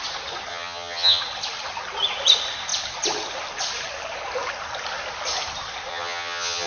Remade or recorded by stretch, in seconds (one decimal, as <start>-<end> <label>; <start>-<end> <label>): 0.0-0.5 recorded; 0.5-1.2 remade; 1.2-5.9 recorded; 5.9-6.7 remade